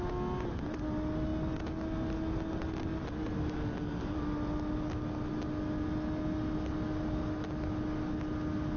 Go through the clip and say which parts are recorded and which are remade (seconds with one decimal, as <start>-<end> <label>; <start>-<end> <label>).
0.0-8.8 recorded